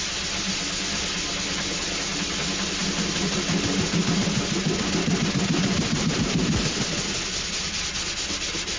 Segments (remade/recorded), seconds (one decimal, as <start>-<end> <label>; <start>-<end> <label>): 0.0-8.8 recorded